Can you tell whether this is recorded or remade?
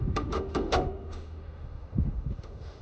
remade